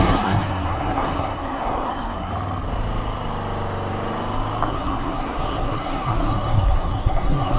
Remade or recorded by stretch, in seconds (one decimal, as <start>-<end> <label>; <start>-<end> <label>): 0.0-2.3 remade; 2.3-4.7 recorded; 4.7-7.6 remade